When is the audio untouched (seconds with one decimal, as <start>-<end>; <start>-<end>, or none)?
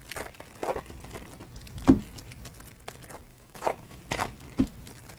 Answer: 0.0-3.3; 4.0-5.2